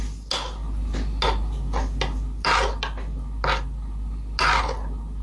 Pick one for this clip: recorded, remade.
recorded